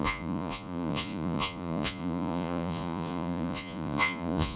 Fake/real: fake